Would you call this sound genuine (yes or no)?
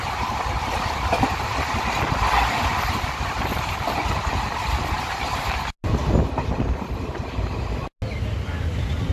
yes